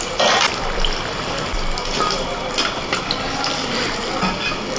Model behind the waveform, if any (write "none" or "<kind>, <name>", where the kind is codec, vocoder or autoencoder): none